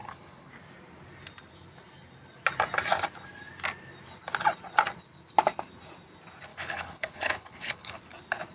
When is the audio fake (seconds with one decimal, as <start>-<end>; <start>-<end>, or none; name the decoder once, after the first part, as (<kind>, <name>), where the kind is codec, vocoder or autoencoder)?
0.0-0.5 (codec, HILCodec); 6.5-8.0